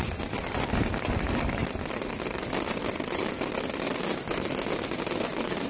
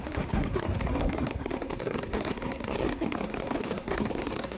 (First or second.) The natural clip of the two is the first